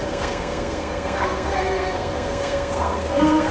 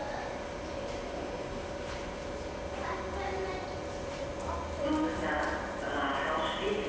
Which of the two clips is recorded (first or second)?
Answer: second